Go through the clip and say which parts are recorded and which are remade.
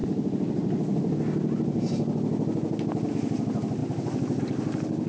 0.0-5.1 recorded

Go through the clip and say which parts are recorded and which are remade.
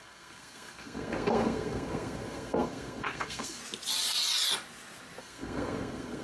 0.0-3.6 remade; 3.6-5.2 recorded; 5.2-6.2 remade